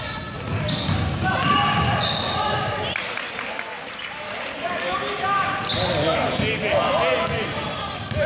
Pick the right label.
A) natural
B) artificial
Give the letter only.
A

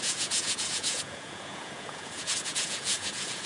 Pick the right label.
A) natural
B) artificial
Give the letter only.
B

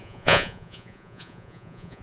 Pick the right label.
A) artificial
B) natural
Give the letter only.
A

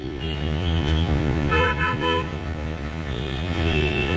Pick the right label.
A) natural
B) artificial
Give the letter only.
B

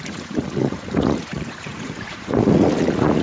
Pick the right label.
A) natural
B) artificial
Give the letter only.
B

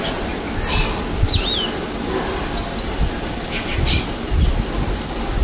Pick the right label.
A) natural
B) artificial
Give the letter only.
A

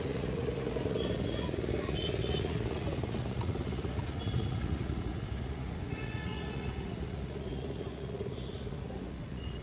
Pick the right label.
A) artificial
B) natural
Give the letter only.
A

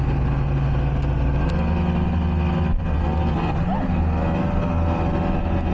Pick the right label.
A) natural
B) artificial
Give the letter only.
A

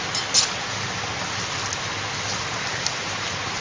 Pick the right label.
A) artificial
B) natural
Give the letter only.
B